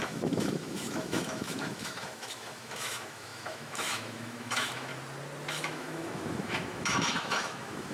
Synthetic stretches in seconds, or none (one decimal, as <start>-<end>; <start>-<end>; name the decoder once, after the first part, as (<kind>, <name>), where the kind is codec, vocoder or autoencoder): 0.0-4.9 (autoencoder, DAC-VAE); 5.5-7.9